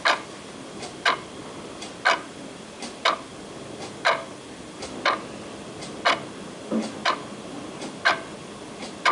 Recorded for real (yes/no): yes